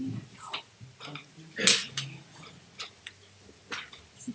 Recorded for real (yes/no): yes